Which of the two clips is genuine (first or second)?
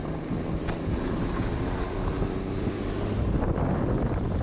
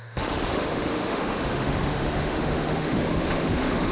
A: first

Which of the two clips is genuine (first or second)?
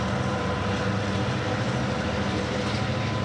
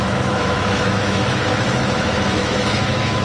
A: first